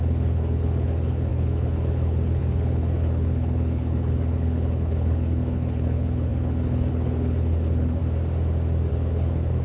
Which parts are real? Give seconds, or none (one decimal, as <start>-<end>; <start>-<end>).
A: 8.0-8.9

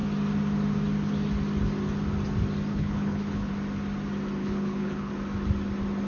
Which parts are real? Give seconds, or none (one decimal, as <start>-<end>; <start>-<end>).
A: 0.0-2.7; 3.5-4.4; 5.1-6.1

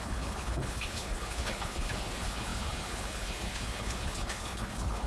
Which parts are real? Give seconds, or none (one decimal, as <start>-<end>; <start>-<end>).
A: none

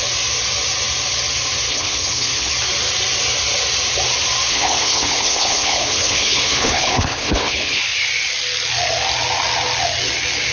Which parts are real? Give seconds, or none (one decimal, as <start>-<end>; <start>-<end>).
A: 0.0-1.7; 2.5-4.5; 7.8-10.5

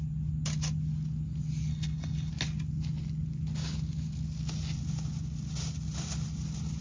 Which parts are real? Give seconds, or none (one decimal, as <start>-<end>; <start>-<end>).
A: 0.0-1.7; 2.3-6.8